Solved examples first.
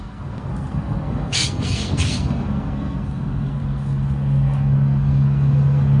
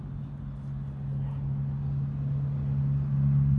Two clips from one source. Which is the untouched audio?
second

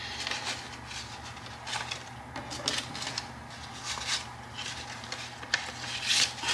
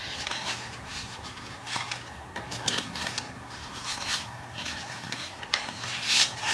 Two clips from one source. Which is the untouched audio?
first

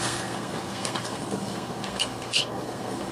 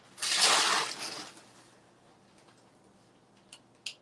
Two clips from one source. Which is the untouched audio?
second